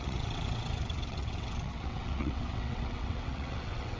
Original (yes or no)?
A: no